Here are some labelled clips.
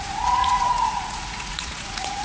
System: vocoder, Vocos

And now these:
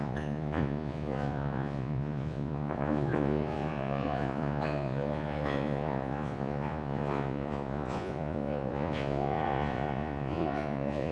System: vocoder, Vocos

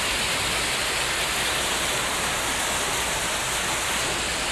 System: none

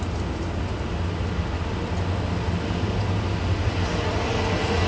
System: none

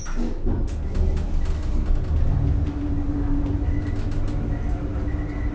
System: none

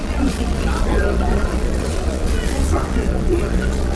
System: vocoder, Vocos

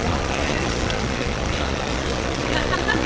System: vocoder, Vocos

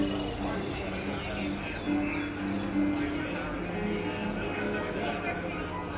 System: none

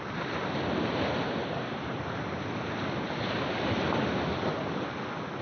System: none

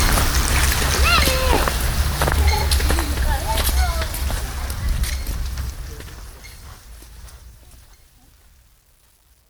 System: none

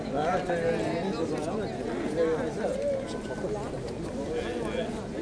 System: none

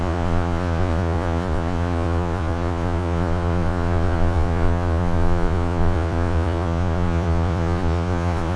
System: vocoder, Vocos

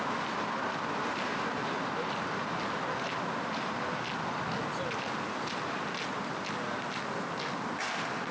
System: none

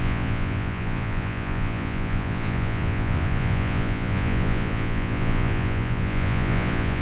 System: vocoder, Vocos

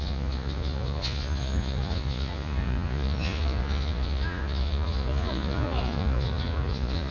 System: vocoder, Vocos